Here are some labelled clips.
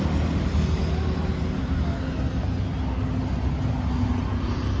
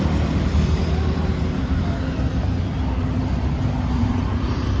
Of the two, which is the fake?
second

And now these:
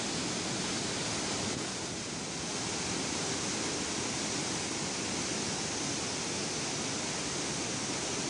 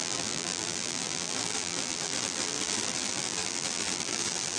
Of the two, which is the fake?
second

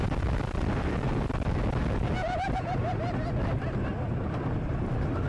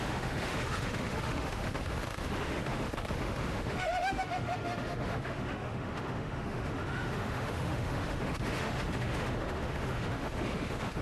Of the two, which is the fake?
second